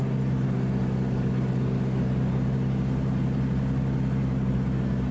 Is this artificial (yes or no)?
no